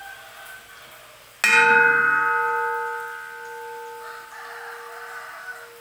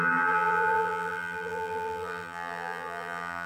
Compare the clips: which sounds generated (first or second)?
second